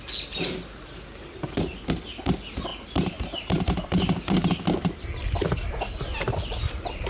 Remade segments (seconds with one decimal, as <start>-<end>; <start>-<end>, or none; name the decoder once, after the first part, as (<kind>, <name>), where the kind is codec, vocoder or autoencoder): none